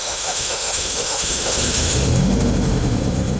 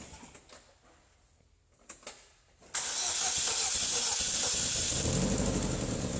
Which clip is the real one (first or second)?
second